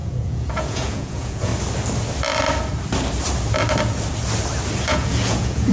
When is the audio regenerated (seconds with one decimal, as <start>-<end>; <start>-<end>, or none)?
0.0-1.5; 4.9-5.7